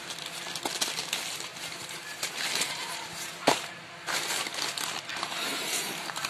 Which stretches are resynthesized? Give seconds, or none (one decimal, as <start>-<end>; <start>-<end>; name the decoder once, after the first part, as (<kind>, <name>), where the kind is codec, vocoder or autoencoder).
1.5-3.9 (vocoder, BigVGAN v2); 5.1-6.3